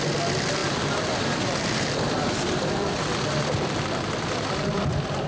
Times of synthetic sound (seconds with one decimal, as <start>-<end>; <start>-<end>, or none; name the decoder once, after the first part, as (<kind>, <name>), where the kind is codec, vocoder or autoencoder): 0.6-3.8 (vocoder, BigVGAN v2)